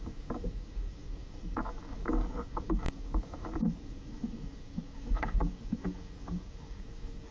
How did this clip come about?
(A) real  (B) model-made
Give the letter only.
B